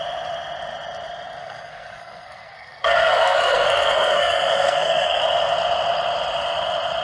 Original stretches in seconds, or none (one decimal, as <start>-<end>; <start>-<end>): 0.0-1.4; 5.2-7.0